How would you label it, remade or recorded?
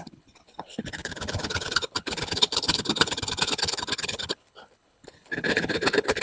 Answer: remade